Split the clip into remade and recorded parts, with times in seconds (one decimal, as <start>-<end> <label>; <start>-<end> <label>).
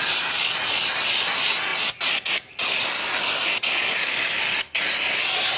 0.0-5.6 recorded